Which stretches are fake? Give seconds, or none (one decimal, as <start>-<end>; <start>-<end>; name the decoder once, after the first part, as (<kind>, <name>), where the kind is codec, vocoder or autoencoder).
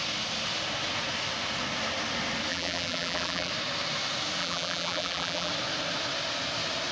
2.5-3.5 (vocoder, BigVGAN v2); 4.4-5.5